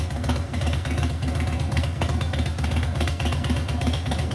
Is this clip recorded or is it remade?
remade